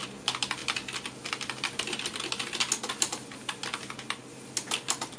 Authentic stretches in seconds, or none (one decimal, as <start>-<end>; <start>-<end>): 0.0-5.2